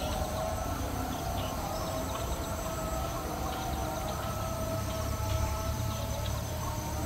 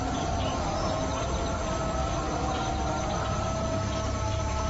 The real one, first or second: second